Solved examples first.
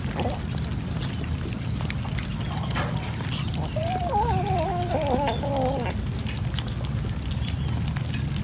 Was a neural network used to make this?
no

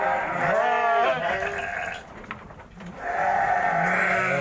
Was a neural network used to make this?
no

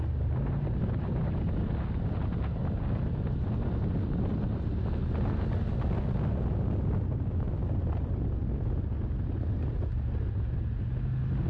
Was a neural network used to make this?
no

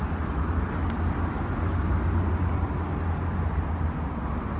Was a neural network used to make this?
no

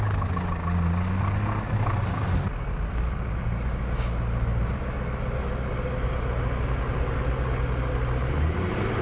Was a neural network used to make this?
no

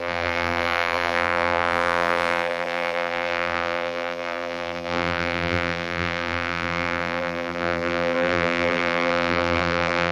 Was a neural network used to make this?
yes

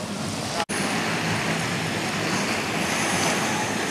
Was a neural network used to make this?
no